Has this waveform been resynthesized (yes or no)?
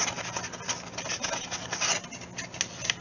no